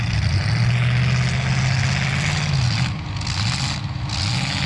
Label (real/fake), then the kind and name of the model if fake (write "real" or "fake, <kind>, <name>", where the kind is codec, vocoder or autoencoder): real